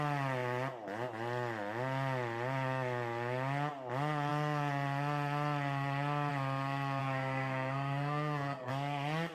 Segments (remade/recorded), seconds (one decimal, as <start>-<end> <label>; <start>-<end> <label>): 0.0-7.0 recorded; 7.0-8.7 remade; 8.7-9.3 recorded